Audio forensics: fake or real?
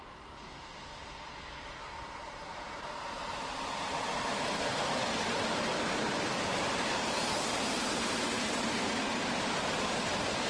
fake